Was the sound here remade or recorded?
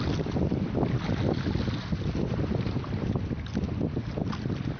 recorded